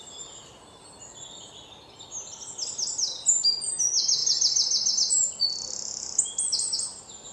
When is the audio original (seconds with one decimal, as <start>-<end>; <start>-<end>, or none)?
0.0-7.3